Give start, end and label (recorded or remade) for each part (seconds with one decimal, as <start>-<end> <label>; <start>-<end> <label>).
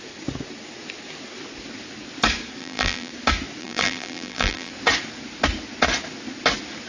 0.0-2.6 recorded; 2.6-3.1 remade; 3.1-3.6 recorded; 3.6-4.7 remade; 4.7-6.9 recorded